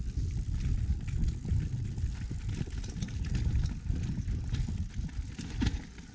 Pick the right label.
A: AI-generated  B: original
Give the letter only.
B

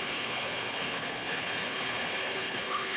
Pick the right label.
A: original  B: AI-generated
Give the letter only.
B